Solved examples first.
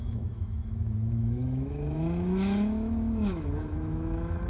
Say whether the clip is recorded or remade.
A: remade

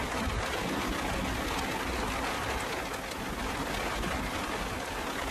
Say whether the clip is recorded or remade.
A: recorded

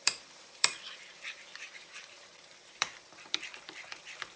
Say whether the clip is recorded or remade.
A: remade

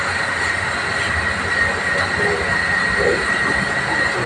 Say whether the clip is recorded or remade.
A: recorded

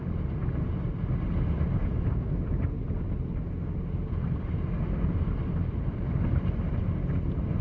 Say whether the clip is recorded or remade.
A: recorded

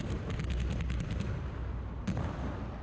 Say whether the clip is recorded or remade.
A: recorded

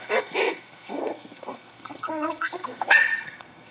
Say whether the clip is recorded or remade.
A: remade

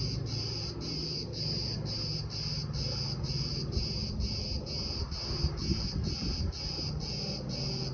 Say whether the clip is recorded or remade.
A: recorded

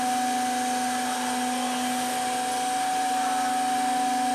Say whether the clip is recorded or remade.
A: recorded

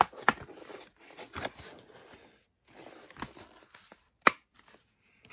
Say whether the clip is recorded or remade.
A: recorded